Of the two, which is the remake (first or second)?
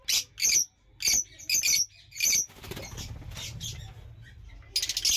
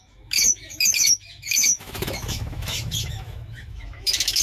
second